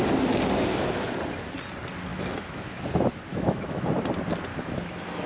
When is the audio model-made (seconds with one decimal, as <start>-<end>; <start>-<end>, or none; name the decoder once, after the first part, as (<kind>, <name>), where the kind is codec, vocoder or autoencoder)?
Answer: 2.1-2.8 (autoencoder, DAC-VAE); 3.3-3.9; 4.5-5.3

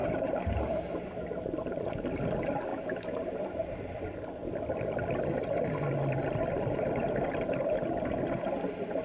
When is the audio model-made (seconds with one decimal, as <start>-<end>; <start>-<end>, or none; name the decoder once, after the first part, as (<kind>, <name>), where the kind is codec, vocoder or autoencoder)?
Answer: 0.0-1.7 (vocoder, BigVGAN v2); 2.7-3.7

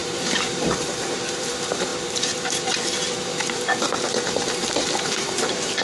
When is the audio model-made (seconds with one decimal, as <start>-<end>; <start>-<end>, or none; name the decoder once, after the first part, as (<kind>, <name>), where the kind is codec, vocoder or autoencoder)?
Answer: 0.0-5.8 (vocoder, BigVGAN v2)

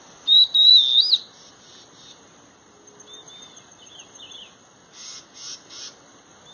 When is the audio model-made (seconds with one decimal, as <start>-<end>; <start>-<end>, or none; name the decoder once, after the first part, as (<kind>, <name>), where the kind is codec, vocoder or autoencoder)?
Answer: none

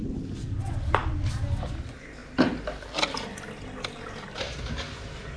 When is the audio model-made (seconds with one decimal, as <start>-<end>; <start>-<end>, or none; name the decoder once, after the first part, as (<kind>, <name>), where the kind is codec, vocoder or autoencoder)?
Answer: none

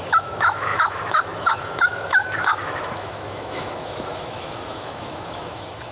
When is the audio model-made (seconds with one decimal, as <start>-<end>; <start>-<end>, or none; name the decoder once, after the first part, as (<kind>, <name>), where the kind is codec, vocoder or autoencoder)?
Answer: 0.0-5.9 (autoencoder, DAC-VAE)

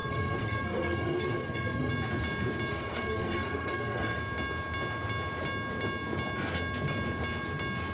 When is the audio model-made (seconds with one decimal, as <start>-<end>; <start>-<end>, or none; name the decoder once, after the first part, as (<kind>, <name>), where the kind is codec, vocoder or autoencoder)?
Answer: 0.0-1.9 (codec, SNAC); 2.7-4.2